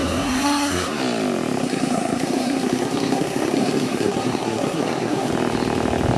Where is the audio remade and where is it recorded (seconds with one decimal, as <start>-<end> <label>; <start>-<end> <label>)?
0.0-1.0 remade; 1.0-1.6 recorded; 1.6-5.3 remade; 5.3-6.2 recorded